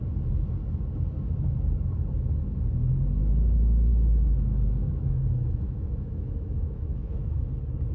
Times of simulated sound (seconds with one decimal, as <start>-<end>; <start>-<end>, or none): 3.9-7.4